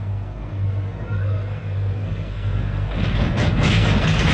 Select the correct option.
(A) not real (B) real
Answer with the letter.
A